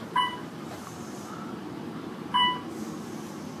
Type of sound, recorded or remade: remade